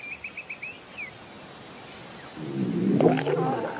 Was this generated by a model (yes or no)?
no